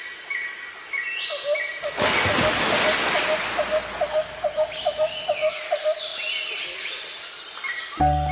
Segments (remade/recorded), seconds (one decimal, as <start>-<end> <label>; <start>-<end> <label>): 0.0-8.3 recorded